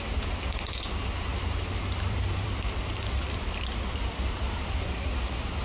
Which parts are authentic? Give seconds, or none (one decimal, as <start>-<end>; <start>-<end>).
0.0-1.3; 4.4-5.6